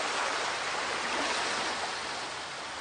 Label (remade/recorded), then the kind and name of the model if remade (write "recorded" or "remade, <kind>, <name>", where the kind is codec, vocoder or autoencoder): recorded